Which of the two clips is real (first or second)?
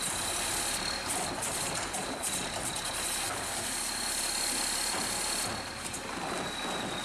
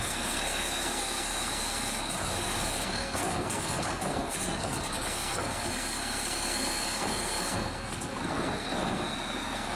first